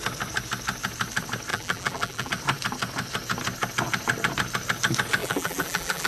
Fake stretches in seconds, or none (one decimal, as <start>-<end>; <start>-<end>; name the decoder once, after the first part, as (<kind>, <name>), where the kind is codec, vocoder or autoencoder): 1.5-2.3 (vocoder, BigVGAN v2); 5.2-6.1